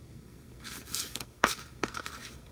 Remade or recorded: remade